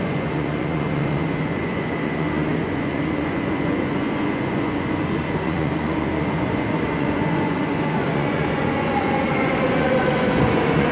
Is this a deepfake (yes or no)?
yes